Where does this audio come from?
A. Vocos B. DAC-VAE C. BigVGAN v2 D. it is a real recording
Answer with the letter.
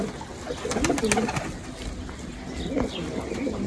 D